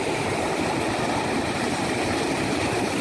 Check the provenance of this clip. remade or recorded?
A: remade